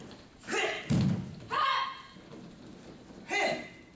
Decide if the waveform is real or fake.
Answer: real